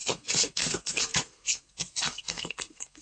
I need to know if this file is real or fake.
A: fake